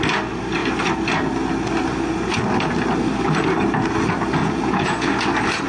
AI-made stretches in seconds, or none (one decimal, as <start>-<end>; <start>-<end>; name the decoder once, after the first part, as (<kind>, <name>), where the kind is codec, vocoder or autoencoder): 4.4-5.1 (vocoder, Vocos)